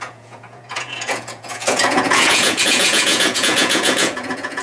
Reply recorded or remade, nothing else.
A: remade